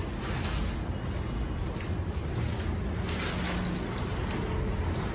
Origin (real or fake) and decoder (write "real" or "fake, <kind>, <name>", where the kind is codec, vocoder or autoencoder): real